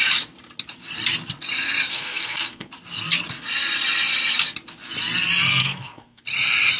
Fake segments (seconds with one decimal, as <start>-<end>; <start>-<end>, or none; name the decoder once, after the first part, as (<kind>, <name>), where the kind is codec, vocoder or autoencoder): 1.9-2.7 (codec, SNAC); 5.6-6.2